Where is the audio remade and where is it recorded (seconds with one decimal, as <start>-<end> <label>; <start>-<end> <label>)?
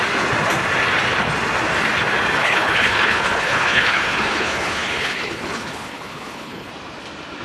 0.0-2.4 recorded; 2.4-6.7 remade; 6.7-7.4 recorded